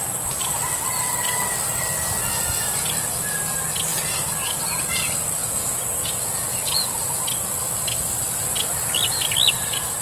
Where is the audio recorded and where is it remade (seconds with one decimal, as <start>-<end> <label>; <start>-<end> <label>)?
0.0-5.4 recorded; 5.4-7.2 remade; 7.2-10.0 recorded